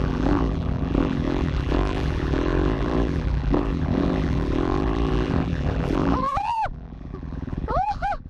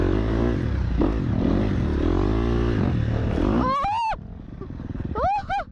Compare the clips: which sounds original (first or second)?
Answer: second